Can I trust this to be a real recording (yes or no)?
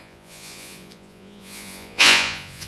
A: no